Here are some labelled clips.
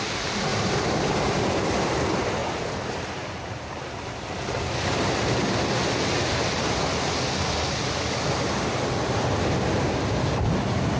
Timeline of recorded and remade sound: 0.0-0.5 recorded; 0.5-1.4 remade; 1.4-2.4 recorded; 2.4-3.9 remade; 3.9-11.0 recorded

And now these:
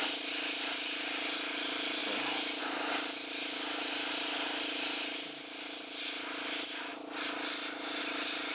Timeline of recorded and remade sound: 0.0-2.0 remade; 2.0-2.6 recorded; 2.6-6.9 remade; 6.9-8.0 recorded; 8.0-8.5 remade

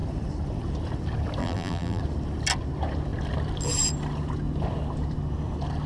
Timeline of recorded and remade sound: 0.0-1.4 recorded; 1.4-2.0 remade; 2.0-5.9 recorded

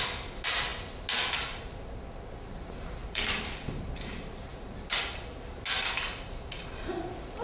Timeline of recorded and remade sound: 0.0-3.0 recorded; 3.0-3.9 remade; 3.9-4.5 recorded; 4.5-5.0 remade; 5.0-7.4 recorded

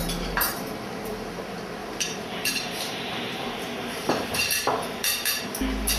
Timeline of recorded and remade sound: 0.0-1.4 remade; 1.4-1.8 recorded; 1.8-5.4 remade; 5.4-6.0 recorded